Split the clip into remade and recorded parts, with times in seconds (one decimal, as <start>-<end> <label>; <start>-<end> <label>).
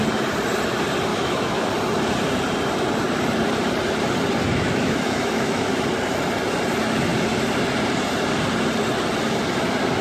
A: 0.0-1.1 recorded; 1.1-1.7 remade; 1.7-4.5 recorded; 4.5-5.7 remade; 5.7-10.0 recorded